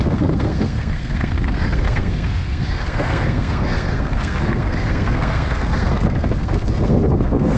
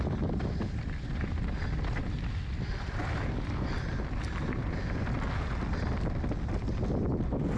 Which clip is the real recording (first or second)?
second